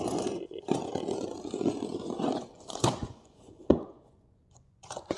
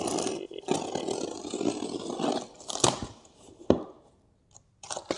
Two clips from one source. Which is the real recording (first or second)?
second